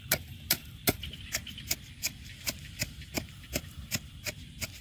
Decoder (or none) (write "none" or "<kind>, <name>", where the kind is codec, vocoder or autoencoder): vocoder, BigVGAN v2